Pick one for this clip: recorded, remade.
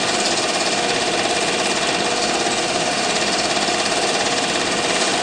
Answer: recorded